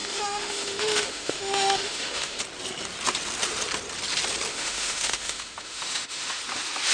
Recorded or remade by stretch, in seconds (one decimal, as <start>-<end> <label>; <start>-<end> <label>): 0.0-2.4 remade; 2.4-4.5 recorded; 4.5-6.4 remade; 6.4-6.9 recorded